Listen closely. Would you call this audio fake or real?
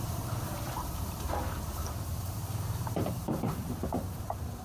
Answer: fake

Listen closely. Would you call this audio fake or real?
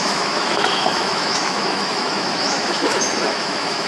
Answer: fake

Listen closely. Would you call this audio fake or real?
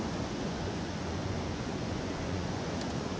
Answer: fake